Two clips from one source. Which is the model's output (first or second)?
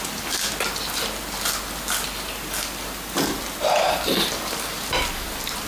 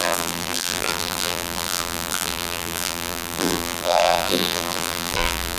second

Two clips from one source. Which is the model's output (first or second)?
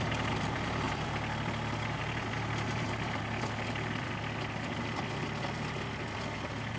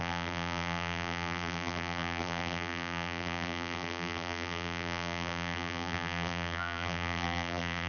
second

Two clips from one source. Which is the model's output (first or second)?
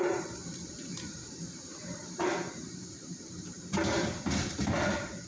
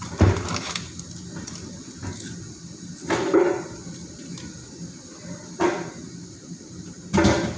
first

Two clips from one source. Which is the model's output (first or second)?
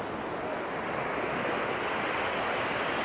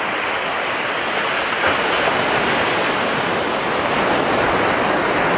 second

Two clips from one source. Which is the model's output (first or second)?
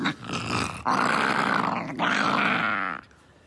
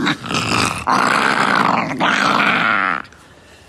second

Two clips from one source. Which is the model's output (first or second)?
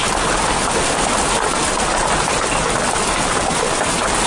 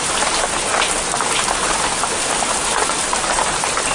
second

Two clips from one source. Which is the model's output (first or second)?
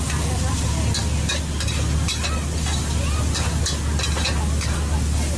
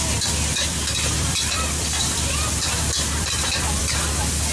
second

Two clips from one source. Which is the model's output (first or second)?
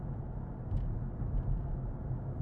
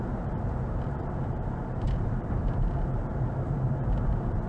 second